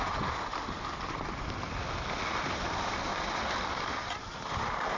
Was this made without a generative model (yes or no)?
yes